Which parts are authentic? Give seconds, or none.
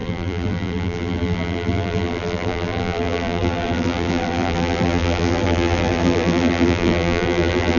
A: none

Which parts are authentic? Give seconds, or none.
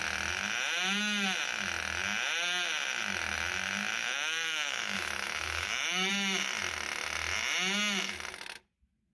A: 0.0-4.0; 6.1-9.1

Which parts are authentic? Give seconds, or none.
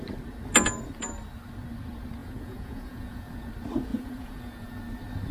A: 0.0-2.2; 3.5-3.9; 4.8-5.3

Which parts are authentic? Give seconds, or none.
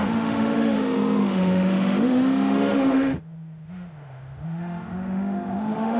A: none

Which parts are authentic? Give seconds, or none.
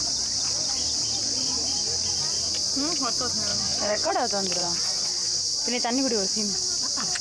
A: 0.0-3.5; 4.1-4.6; 5.4-7.2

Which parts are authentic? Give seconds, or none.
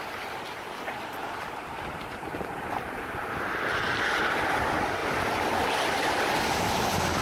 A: 0.0-7.2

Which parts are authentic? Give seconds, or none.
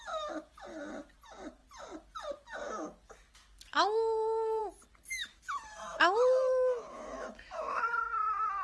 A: 0.0-5.1; 7.9-8.6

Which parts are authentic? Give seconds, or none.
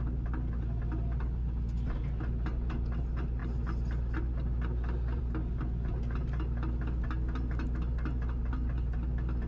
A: 0.0-9.5